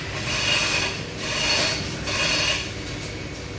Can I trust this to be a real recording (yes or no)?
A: yes